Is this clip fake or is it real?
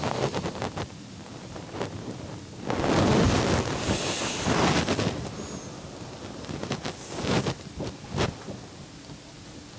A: real